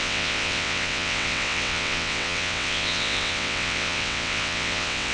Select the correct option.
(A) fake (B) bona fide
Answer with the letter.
A